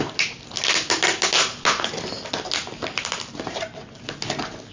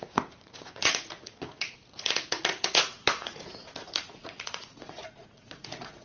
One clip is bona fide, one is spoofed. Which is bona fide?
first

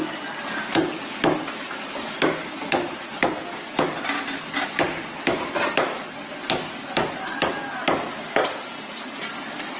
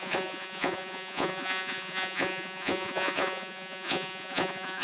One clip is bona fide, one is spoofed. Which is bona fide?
first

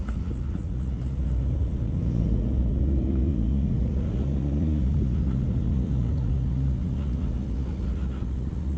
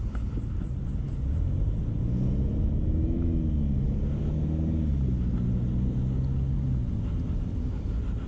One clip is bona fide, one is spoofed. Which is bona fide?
second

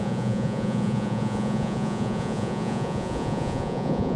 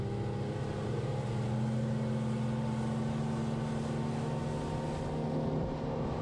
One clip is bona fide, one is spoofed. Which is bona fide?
second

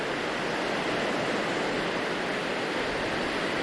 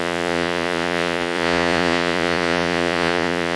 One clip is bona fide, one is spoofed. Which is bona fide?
first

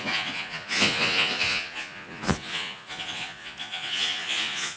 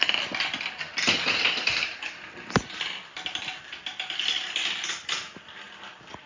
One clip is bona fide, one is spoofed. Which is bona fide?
second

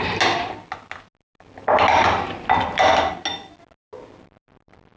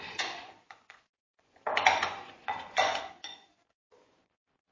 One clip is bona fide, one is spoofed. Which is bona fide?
first